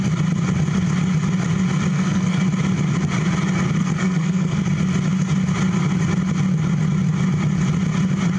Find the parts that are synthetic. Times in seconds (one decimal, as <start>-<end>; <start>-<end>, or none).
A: 1.9-2.4; 3.8-4.6